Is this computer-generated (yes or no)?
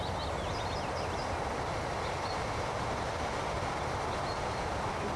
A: no